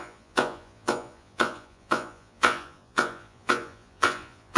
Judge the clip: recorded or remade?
remade